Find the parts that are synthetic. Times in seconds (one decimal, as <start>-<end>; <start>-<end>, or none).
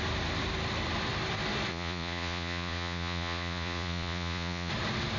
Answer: 1.7-4.7